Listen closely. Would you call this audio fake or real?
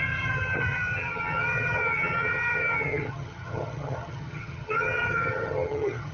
fake